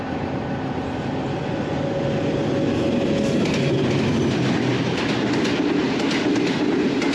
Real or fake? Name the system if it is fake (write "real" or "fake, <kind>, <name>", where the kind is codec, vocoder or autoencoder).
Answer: real